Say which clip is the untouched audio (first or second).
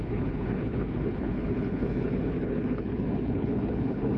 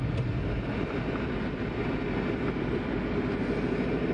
second